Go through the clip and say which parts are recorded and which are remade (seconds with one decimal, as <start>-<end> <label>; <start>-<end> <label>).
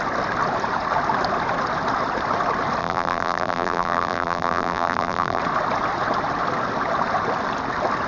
0.0-2.8 recorded; 2.8-5.4 remade; 5.4-8.1 recorded